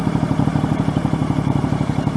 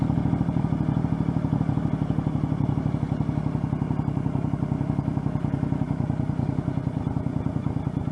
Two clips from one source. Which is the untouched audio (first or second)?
second